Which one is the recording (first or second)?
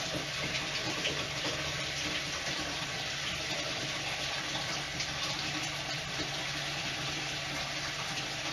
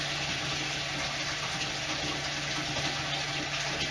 second